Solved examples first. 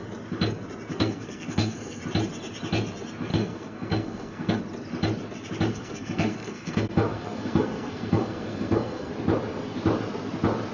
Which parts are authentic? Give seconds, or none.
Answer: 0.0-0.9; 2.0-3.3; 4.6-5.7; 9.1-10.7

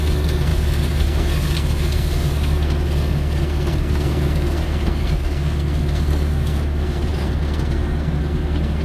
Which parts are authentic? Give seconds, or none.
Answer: none

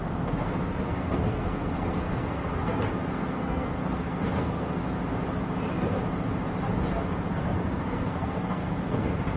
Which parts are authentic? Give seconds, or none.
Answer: 4.8-7.3

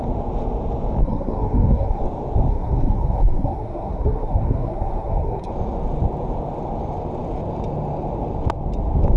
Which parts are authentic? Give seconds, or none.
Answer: 0.0-1.0; 2.0-2.5; 5.5-9.2